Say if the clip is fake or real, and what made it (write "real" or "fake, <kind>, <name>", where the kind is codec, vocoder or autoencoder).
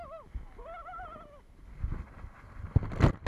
real